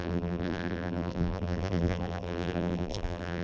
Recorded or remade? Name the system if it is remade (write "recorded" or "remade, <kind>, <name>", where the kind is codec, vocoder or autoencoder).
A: remade, vocoder, BigVGAN v2